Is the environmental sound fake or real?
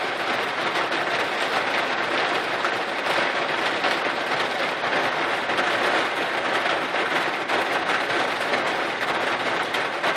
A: real